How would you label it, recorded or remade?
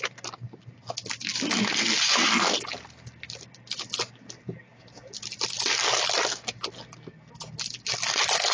recorded